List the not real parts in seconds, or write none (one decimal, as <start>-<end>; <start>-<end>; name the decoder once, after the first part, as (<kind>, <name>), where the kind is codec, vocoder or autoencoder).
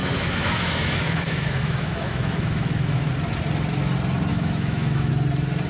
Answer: 0.0-3.1 (autoencoder, DAC-VAE); 4.3-5.1